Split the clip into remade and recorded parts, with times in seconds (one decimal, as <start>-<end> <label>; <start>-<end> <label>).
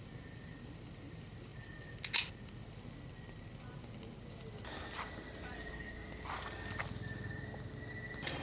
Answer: 0.0-8.4 recorded